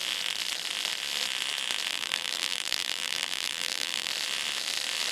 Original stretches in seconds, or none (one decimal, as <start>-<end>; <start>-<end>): 0.0-1.9; 4.1-5.1